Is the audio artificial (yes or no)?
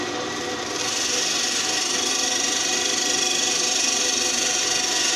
no